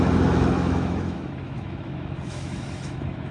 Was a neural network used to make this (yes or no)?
yes